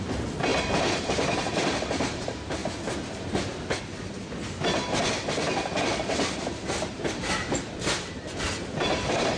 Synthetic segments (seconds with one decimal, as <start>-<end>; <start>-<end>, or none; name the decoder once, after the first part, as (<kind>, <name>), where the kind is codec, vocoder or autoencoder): 0.0-2.6 (vocoder, BigVGAN v2); 5.8-9.4